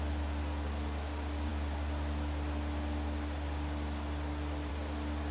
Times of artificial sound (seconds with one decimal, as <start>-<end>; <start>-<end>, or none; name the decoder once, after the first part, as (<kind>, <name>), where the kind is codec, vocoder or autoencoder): none